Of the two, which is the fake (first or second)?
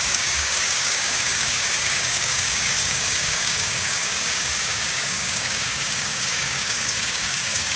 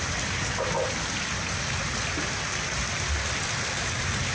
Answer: first